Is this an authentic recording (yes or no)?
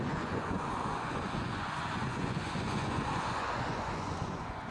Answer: no